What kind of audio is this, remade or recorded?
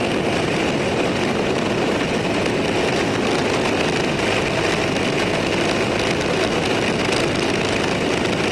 recorded